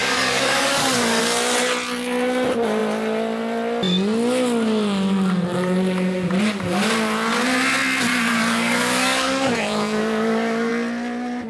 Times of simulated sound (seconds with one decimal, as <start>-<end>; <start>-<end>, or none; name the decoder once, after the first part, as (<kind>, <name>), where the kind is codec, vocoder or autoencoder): 0.0-1.2 (codec, DAC); 8.1-10.7